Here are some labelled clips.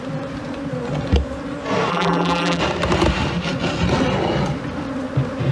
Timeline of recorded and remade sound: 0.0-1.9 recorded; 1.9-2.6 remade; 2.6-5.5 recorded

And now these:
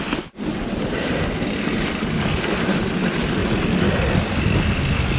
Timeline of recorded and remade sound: 0.0-5.2 recorded